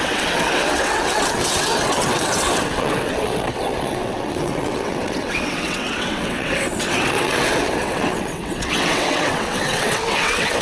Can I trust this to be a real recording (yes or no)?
no